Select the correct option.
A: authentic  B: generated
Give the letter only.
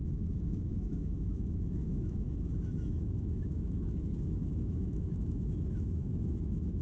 B